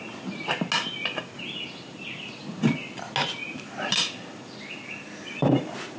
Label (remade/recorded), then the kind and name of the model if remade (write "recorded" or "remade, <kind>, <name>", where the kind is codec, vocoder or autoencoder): recorded